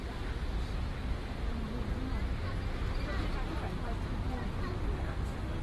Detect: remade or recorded recorded